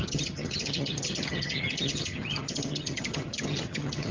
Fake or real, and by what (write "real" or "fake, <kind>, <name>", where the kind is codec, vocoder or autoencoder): fake, vocoder, HiFi-GAN